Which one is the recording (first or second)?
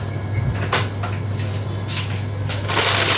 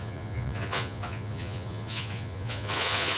first